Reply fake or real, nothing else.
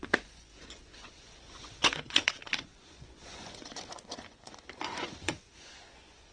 fake